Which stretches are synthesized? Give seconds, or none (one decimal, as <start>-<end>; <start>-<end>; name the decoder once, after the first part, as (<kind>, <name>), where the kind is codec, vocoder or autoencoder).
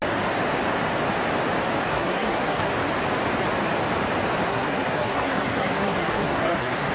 1.9-2.7 (codec, SNAC); 4.5-6.9